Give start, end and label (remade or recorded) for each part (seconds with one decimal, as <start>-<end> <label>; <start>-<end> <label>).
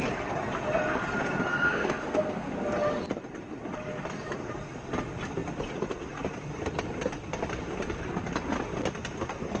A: 0.0-1.5 recorded; 1.5-2.5 remade; 2.5-9.6 recorded